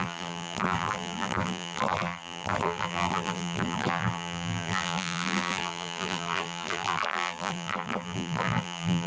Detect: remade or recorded remade